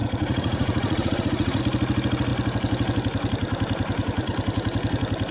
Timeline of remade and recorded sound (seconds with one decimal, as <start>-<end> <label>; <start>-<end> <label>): 0.0-1.6 remade; 1.6-5.3 recorded